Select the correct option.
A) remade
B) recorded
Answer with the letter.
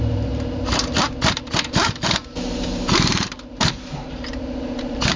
A